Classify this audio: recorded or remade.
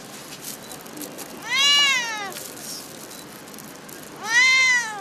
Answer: recorded